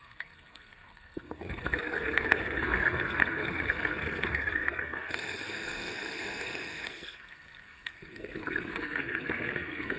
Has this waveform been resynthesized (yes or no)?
yes